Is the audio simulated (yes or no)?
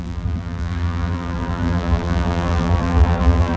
yes